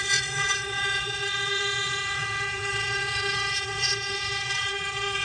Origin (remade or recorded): remade